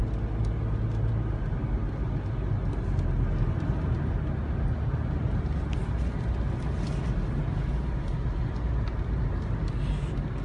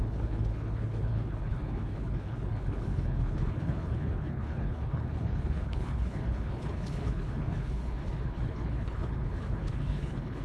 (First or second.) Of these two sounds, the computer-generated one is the second